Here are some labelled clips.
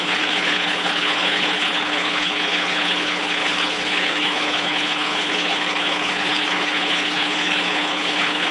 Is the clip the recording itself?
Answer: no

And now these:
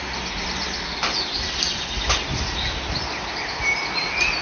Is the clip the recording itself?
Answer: yes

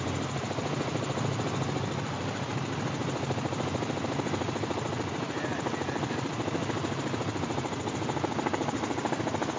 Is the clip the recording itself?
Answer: yes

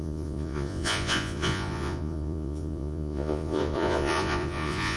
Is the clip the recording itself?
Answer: no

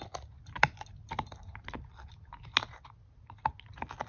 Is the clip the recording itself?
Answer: yes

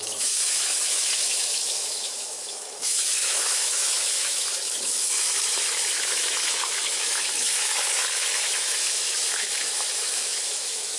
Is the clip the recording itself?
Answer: no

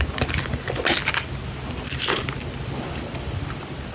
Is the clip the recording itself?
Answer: yes